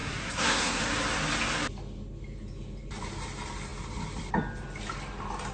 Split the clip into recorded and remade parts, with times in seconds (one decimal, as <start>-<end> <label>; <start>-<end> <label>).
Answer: 0.0-0.8 remade; 0.8-5.5 recorded